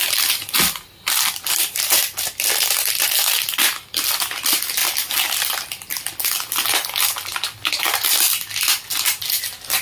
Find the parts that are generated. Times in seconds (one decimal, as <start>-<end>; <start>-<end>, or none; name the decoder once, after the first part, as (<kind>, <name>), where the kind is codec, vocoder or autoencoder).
none